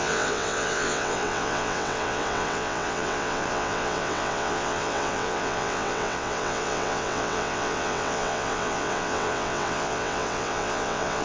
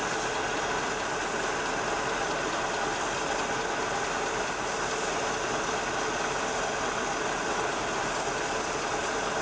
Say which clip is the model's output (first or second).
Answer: first